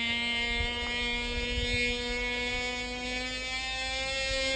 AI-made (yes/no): no